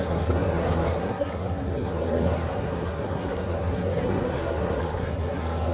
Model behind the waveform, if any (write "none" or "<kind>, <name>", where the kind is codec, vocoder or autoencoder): codec, SNAC